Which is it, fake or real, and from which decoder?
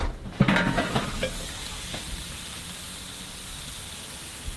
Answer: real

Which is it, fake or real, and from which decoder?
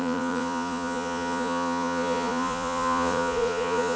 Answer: fake, vocoder, Vocos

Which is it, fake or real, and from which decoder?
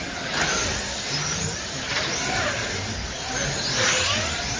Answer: real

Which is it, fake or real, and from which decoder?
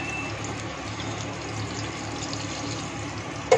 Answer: real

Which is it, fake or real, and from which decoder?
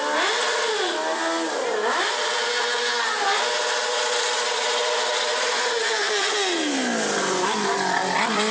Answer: real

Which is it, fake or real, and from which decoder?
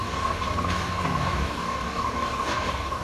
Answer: fake, codec, DAC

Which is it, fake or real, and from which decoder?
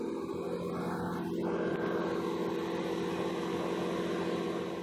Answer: real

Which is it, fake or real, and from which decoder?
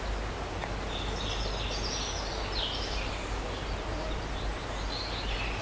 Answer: real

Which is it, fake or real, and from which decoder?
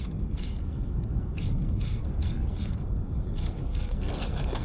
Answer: fake, codec, SNAC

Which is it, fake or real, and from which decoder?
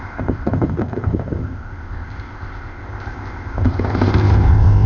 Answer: fake, codec, ZipCodec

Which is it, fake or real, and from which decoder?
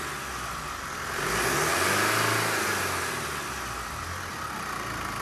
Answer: real